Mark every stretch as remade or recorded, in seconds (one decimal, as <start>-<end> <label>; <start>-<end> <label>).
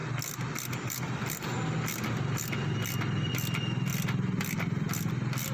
0.0-5.5 recorded